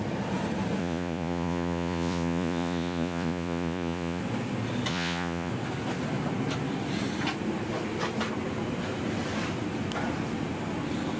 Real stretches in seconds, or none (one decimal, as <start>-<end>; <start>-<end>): 0.0-0.8; 4.2-4.9; 5.5-11.2